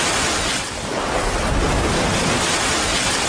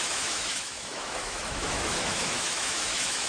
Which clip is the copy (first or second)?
second